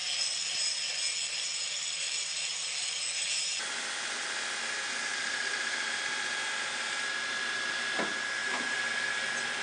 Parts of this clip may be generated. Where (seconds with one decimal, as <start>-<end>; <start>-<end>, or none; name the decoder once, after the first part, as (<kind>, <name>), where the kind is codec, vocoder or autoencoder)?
0.0-3.6 (vocoder, BigVGAN v2); 5.1-6.0; 8.4-8.9